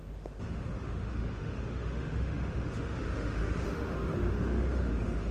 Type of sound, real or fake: fake